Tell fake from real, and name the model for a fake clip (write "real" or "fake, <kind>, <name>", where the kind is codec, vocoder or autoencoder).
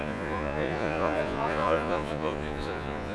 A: fake, vocoder, Vocos